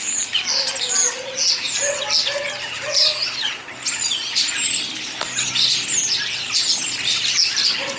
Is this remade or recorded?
recorded